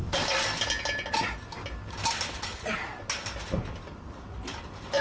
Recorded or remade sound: recorded